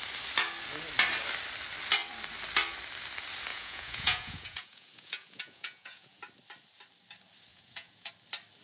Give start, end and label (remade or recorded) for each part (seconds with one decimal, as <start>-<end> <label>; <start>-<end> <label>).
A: 0.0-3.5 recorded; 3.5-6.2 remade; 6.2-7.5 recorded; 7.5-8.1 remade; 8.1-8.6 recorded